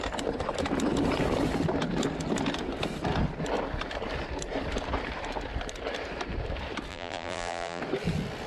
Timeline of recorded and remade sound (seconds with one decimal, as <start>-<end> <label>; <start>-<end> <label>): 0.0-6.9 recorded; 6.9-7.8 remade; 7.8-8.5 recorded